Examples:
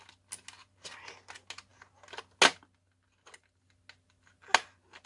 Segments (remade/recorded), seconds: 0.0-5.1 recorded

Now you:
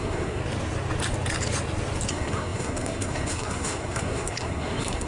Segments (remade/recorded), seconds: 0.0-0.4 remade; 0.4-2.1 recorded; 2.1-5.1 remade

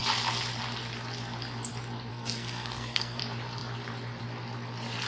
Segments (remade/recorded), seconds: 0.0-2.1 recorded; 2.1-3.2 remade; 3.2-5.1 recorded

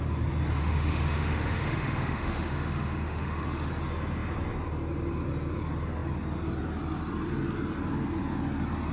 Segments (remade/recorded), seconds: 0.0-0.6 recorded; 0.6-3.7 remade; 3.7-8.9 recorded